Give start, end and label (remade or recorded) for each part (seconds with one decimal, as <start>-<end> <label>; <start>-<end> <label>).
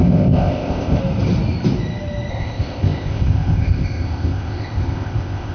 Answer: 0.0-1.0 remade; 1.0-2.3 recorded; 2.3-5.5 remade